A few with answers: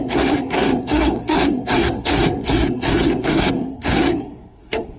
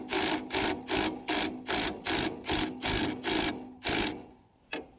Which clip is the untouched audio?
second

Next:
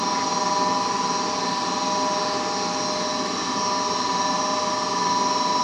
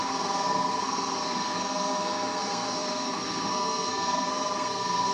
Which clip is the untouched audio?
first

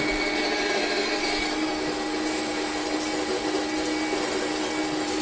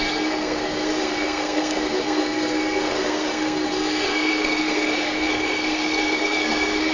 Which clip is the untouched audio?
first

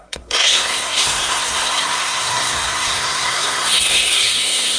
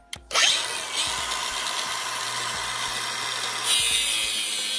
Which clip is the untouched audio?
second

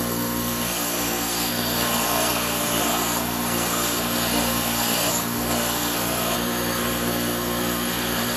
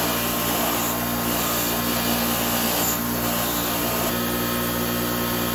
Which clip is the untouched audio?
second